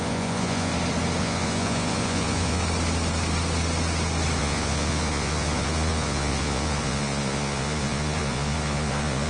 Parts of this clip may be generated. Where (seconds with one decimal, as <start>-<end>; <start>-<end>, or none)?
0.0-0.7; 1.2-2.6; 4.4-9.3